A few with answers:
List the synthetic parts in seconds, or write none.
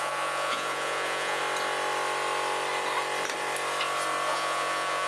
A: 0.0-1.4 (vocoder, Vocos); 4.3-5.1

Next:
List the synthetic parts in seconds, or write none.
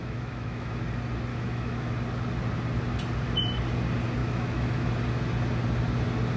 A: 0.0-0.7 (autoencoder, DAC-VAE); 1.3-1.9; 4.2-4.9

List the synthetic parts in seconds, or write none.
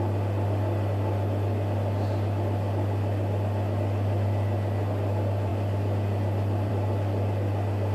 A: none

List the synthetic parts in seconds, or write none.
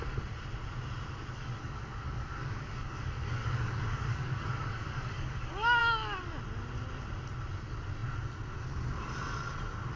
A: 1.3-5.8 (codec, DAC)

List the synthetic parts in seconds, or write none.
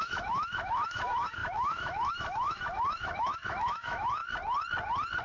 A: 0.0-4.2 (autoencoder, DAC-VAE)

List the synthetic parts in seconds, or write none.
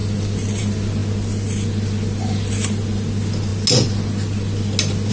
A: none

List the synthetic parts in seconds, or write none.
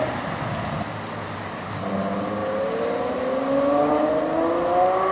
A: none